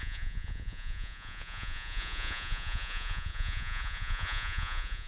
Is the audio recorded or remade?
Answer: remade